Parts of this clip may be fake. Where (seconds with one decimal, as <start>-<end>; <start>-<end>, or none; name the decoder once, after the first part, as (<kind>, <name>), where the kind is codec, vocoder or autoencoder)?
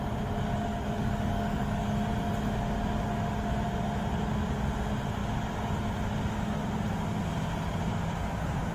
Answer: 0.7-2.0 (codec, DAC)